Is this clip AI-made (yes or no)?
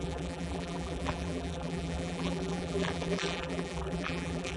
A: yes